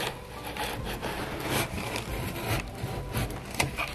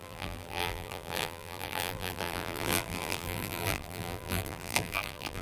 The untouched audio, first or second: first